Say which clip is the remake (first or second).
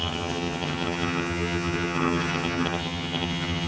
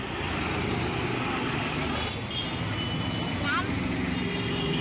first